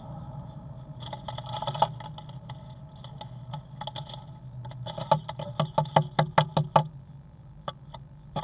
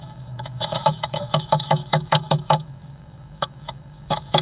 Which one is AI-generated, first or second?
second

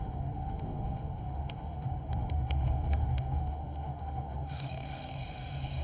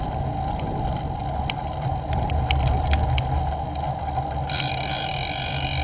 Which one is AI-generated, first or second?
first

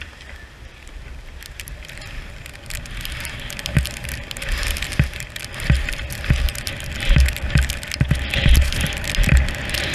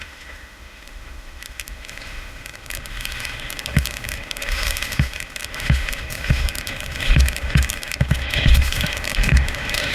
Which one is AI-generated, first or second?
second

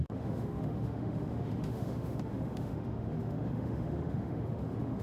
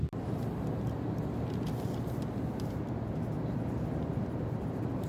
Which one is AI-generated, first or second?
first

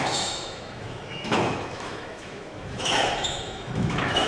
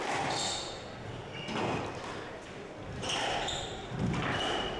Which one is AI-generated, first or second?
first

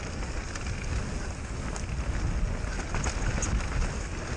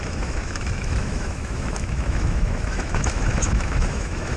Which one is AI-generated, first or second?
second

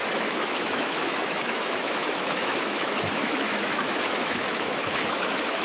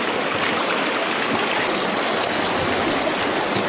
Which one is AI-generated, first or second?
first